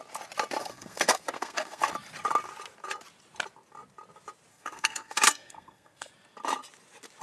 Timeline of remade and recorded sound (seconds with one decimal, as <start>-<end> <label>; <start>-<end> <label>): 0.0-0.6 recorded; 0.6-1.9 remade; 1.9-4.5 recorded; 4.5-6.1 remade; 6.1-7.2 recorded